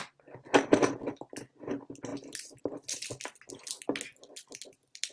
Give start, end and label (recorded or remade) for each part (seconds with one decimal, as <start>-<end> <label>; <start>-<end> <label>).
0.0-5.1 recorded